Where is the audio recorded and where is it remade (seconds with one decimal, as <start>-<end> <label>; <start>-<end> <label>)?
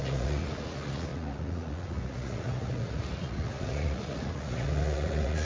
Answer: 0.0-5.4 remade